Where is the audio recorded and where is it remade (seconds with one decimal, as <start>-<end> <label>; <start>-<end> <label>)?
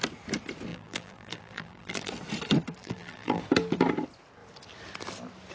0.0-0.7 recorded; 0.7-2.1 remade; 2.1-2.8 recorded; 2.8-3.4 remade; 3.4-5.5 recorded